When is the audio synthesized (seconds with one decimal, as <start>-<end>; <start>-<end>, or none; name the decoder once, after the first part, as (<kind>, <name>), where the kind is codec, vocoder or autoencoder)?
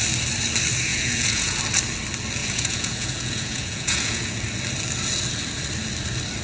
0.9-1.6 (vocoder, Vocos); 2.4-4.4